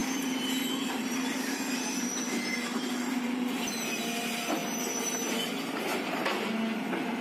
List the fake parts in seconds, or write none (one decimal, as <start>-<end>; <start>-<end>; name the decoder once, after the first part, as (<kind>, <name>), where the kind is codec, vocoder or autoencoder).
0.0-1.8 (vocoder, BigVGAN v2); 2.7-3.9; 4.6-5.5